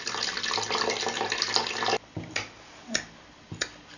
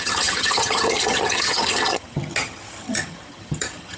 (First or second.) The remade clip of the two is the second